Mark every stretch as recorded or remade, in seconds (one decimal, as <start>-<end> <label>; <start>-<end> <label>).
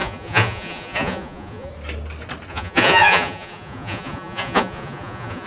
0.0-1.7 remade; 1.7-2.5 recorded; 2.5-5.5 remade